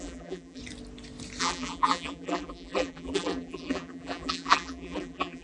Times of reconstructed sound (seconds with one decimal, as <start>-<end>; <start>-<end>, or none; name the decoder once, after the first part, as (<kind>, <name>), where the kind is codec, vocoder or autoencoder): 0.0-0.6 (vocoder, BigVGAN v2); 1.4-5.4